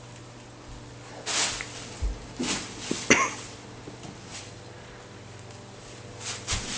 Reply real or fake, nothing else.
real